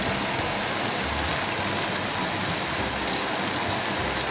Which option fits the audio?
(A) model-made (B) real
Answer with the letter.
B